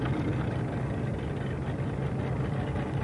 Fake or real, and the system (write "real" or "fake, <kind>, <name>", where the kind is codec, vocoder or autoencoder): real